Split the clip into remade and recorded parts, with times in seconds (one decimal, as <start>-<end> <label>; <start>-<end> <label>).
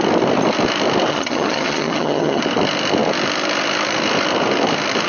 0.0-1.1 recorded; 1.1-2.4 remade; 2.4-5.1 recorded